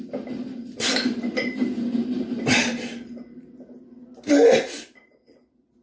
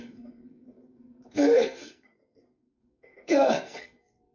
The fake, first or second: second